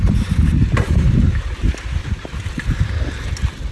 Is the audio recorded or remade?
remade